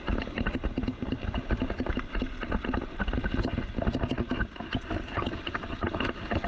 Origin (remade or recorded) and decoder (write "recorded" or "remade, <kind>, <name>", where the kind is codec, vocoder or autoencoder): recorded